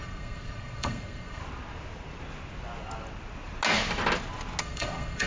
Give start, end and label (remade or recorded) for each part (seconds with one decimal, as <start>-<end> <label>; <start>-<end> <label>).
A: 0.0-1.4 remade; 1.4-4.6 recorded; 4.6-5.3 remade